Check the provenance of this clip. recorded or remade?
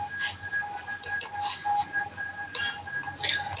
remade